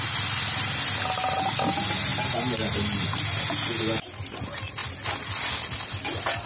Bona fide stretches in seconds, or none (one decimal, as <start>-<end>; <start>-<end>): 0.0-6.5